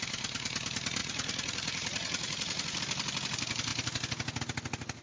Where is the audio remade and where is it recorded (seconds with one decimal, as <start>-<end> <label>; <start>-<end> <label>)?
0.0-1.0 recorded; 1.0-2.8 remade; 2.8-5.0 recorded